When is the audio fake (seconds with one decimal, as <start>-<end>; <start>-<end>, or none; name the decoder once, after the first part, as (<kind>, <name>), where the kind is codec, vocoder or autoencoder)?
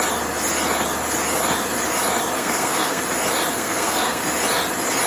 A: 2.4-3.0 (codec, SNAC); 3.5-4.2